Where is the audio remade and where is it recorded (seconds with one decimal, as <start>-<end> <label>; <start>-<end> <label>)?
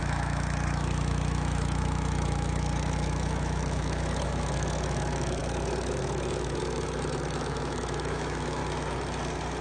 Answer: 0.0-8.6 remade; 8.6-9.6 recorded